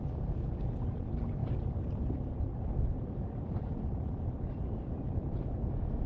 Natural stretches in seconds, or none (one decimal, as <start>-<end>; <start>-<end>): 0.0-2.5; 4.3-6.1

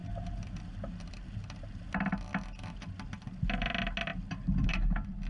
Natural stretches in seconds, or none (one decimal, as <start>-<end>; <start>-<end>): 0.0-5.3

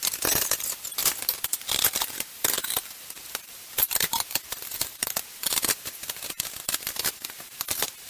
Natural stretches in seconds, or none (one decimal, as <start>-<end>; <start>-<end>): 1.0-2.3

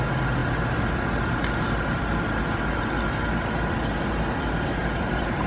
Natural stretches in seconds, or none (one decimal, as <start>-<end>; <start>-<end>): 0.0-4.8

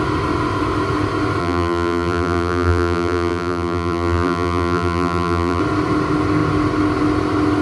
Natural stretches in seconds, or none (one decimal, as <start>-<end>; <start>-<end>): 0.0-1.4; 5.6-7.6

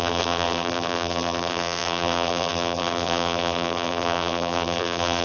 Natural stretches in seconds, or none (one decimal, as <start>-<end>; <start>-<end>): none